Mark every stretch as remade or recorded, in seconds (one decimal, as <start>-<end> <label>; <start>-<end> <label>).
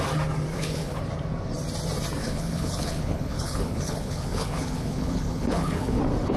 0.0-0.5 recorded; 0.5-1.0 remade; 1.0-2.2 recorded; 2.2-6.0 remade; 6.0-6.4 recorded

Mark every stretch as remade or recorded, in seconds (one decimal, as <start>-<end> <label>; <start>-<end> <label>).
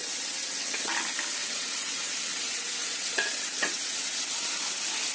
0.0-0.9 remade; 0.9-1.4 recorded; 1.4-4.5 remade; 4.5-5.1 recorded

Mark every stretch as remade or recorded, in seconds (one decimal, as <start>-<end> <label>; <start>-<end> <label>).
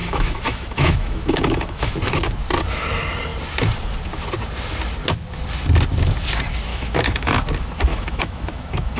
0.0-1.9 remade; 1.9-6.7 recorded; 6.7-7.4 remade; 7.4-7.9 recorded; 7.9-9.0 remade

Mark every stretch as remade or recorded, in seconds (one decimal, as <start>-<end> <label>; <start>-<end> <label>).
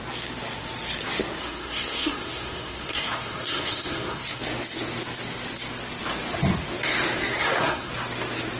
0.0-1.4 recorded; 1.4-4.4 remade; 4.4-7.3 recorded; 7.3-7.9 remade; 7.9-8.6 recorded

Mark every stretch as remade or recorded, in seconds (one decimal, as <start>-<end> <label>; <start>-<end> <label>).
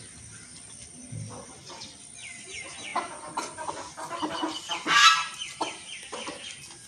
0.0-6.9 recorded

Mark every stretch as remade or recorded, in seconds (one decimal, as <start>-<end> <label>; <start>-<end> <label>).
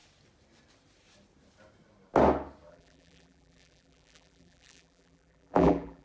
0.0-2.7 recorded; 2.7-6.0 remade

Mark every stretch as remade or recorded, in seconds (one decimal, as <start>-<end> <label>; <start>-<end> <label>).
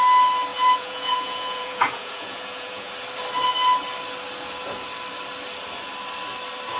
0.0-0.5 recorded; 0.5-2.9 remade; 2.9-6.8 recorded